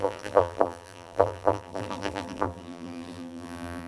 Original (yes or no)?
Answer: no